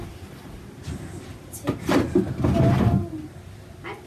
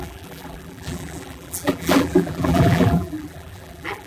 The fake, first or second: second